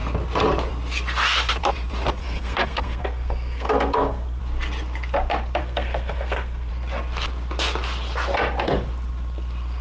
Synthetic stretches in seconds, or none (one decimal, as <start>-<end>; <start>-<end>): 2.2-4.4; 5.6-6.7